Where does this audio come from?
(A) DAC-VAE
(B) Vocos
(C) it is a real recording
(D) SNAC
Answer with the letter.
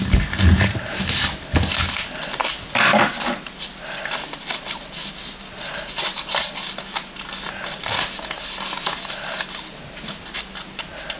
C